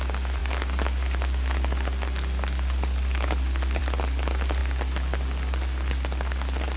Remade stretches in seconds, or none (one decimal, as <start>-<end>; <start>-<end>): none